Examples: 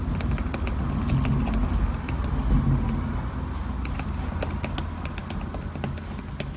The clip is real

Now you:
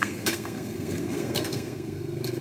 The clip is fake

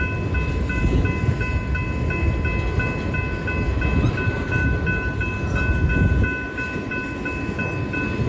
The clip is real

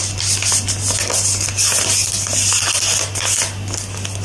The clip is real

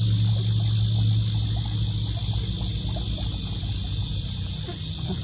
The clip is real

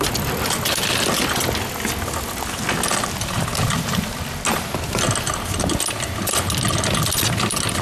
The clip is real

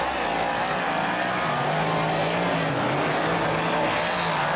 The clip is real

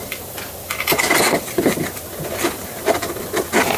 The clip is real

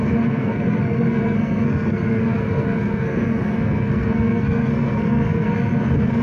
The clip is fake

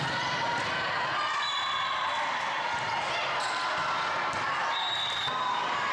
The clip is real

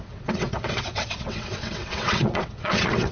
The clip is fake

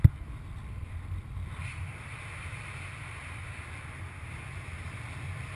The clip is real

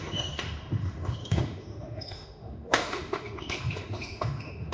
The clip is fake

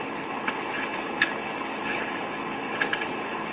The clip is fake